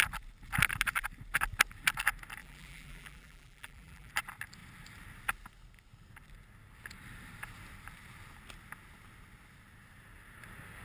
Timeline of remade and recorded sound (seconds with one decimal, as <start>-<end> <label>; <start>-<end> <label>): 0.0-2.4 recorded; 2.4-4.1 remade; 4.1-10.8 recorded

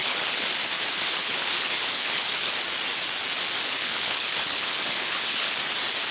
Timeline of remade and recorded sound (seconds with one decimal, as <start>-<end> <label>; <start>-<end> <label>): 0.0-0.5 remade; 0.5-0.9 recorded; 0.9-2.5 remade; 2.5-3.8 recorded; 3.8-5.5 remade; 5.5-6.1 recorded

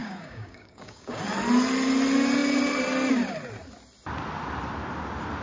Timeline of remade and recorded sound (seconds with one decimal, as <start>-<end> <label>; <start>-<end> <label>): 0.0-1.2 remade; 1.2-5.4 recorded